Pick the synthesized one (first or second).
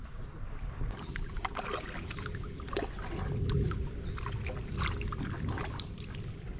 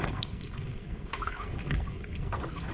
second